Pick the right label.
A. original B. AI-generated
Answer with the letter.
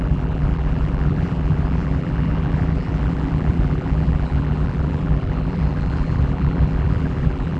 B